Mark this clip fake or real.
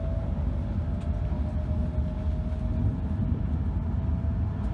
real